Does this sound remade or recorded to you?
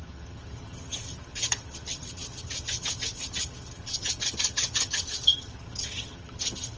remade